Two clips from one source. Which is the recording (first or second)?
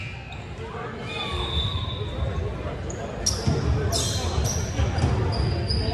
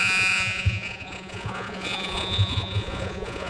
first